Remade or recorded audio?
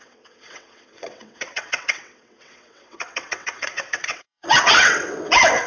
remade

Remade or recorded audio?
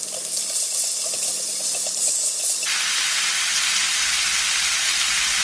recorded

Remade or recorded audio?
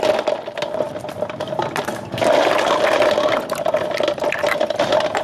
recorded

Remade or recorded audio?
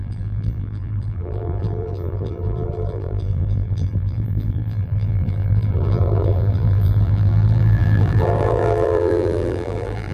remade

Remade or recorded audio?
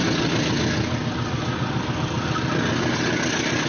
recorded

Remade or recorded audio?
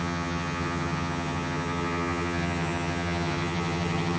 remade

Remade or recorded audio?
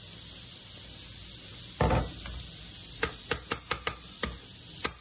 recorded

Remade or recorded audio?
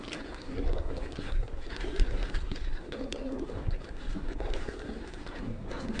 remade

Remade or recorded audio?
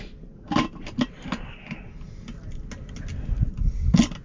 recorded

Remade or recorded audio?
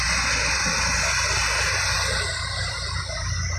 recorded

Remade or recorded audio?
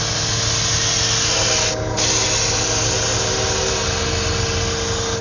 recorded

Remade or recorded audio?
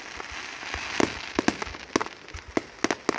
recorded